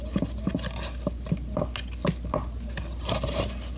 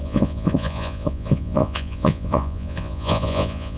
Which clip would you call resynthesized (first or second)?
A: second